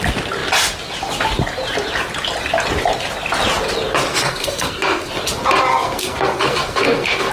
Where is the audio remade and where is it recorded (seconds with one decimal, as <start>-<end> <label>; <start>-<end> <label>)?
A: 0.0-4.1 recorded; 4.1-5.1 remade; 5.1-5.7 recorded; 5.7-7.3 remade